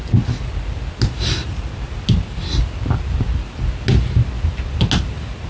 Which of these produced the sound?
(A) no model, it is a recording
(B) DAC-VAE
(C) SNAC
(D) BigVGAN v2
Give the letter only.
A